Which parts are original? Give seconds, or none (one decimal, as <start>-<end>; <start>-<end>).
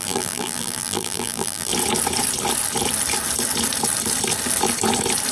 1.7-5.3